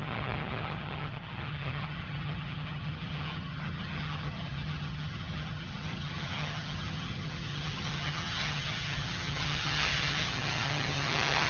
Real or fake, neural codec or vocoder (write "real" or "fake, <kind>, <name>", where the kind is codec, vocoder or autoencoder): fake, vocoder, HiFi-GAN